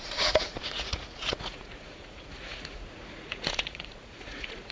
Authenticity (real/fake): fake